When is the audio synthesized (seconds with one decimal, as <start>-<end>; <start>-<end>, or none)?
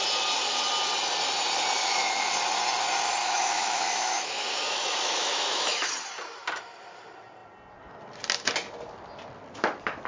1.8-2.3; 3.2-5.9